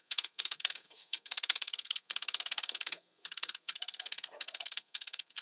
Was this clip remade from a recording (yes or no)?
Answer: yes